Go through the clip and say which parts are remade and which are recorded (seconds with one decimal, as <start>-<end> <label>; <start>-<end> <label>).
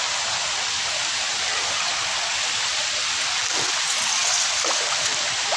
0.0-5.6 recorded